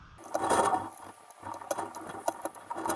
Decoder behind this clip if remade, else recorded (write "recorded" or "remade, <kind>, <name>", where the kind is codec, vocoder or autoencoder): recorded